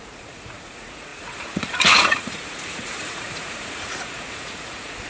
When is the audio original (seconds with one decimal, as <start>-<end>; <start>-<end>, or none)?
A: none